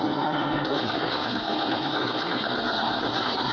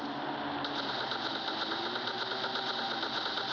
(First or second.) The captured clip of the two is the second